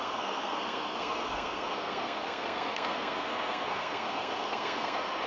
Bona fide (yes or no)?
no